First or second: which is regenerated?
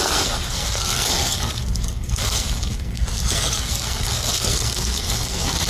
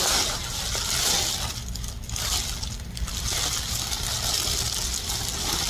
first